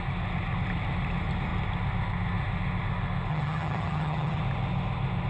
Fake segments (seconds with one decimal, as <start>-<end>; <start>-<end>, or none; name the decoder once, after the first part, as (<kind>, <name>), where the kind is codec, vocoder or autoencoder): 3.3-4.4 (vocoder, HiFi-GAN)